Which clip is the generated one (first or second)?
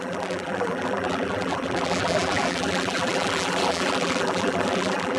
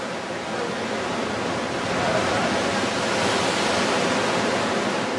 first